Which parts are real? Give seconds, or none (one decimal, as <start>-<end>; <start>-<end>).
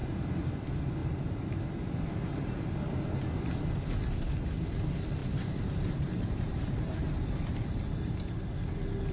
0.5-1.0; 2.0-5.2; 7.5-9.1